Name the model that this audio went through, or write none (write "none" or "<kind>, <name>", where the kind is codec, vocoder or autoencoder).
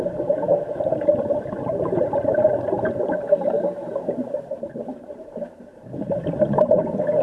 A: vocoder, BigVGAN v2